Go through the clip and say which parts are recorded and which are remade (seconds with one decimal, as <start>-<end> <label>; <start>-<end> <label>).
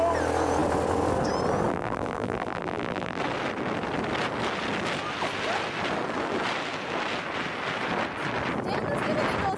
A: 0.0-1.7 recorded; 1.7-3.2 remade; 3.2-9.6 recorded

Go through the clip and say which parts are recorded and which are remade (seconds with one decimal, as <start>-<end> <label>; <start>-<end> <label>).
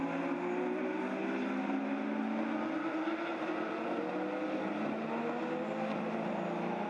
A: 0.0-3.3 recorded; 3.3-4.0 remade; 4.0-6.9 recorded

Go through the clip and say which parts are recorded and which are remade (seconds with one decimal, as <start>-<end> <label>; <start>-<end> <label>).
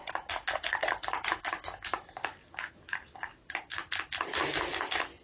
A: 0.0-0.6 recorded; 0.6-2.4 remade; 2.4-3.3 recorded; 3.3-5.2 remade